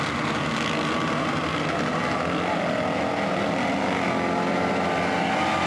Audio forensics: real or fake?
real